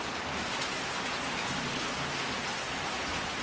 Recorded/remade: recorded